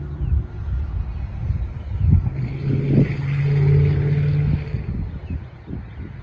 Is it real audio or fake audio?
real